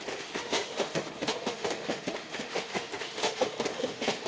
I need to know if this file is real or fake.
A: fake